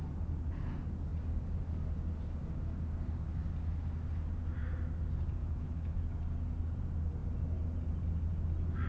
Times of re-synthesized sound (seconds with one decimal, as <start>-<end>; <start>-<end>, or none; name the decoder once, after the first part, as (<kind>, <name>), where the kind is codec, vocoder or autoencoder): 5.4-6.2 (autoencoder, DAC-VAE)